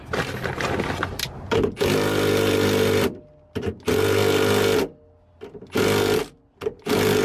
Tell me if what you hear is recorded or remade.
recorded